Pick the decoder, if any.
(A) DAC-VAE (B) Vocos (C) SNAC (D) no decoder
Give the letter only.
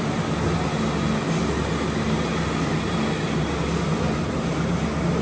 D